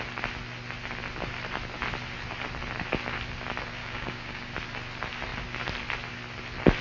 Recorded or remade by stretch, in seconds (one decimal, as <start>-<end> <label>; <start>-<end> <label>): 0.0-3.8 recorded; 3.8-4.5 remade; 4.5-6.8 recorded